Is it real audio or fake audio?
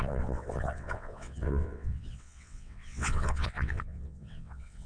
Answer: fake